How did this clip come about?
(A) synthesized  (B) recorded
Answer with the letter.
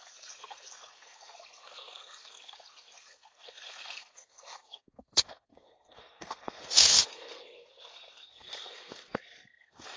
A